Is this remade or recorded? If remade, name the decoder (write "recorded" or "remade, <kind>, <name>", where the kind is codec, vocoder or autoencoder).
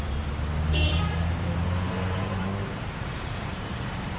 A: remade, vocoder, BigVGAN v2